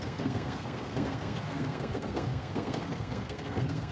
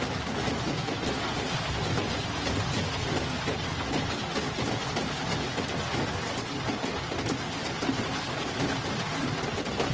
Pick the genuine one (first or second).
second